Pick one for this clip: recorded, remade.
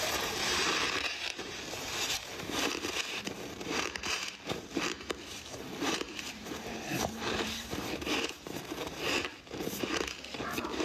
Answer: remade